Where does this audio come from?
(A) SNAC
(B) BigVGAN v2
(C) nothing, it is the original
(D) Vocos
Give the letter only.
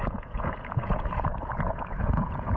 D